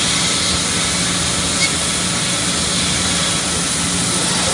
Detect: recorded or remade recorded